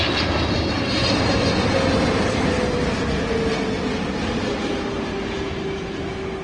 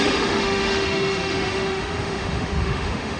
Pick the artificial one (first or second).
second